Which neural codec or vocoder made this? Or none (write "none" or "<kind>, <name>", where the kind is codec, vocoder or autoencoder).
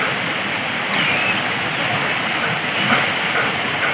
none